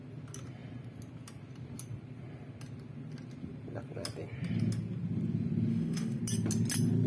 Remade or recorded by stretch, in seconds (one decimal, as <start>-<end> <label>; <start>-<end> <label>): 0.0-5.7 recorded; 5.7-6.2 remade; 6.2-7.1 recorded